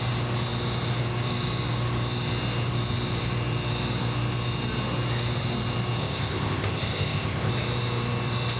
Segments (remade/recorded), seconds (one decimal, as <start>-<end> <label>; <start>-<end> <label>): 0.0-6.0 recorded; 6.0-7.5 remade; 7.5-8.6 recorded